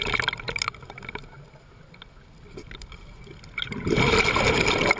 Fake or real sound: real